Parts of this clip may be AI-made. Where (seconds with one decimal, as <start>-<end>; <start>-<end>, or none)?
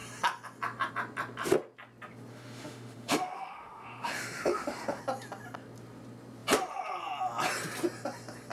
2.3-5.0